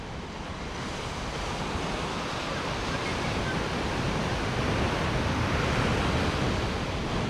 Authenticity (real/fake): real